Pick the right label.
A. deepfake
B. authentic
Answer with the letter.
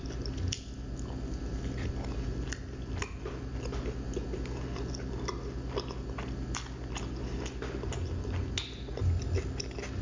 B